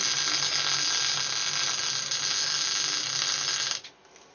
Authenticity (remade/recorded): recorded